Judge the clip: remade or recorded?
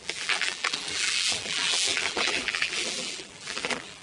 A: remade